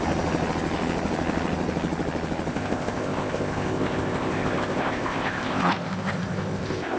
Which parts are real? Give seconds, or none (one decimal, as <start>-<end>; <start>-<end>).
0.0-2.5